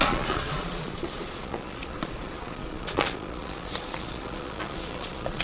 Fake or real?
fake